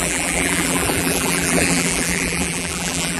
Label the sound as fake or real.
fake